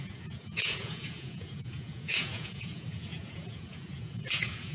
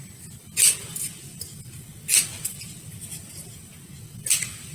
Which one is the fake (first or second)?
first